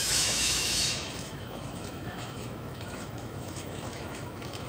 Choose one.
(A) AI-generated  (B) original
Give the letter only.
A